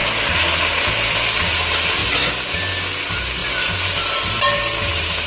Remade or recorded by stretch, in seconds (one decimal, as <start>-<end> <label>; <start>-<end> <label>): 0.0-5.3 recorded